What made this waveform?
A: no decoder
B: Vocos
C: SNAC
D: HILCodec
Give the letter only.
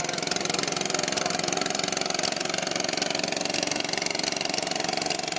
A